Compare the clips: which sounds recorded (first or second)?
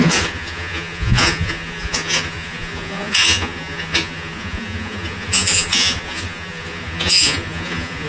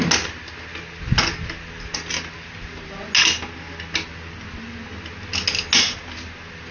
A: second